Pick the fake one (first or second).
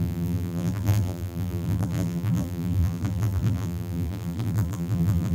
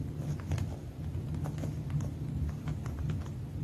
first